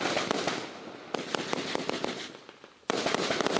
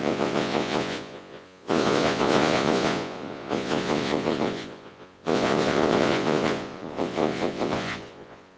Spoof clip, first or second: second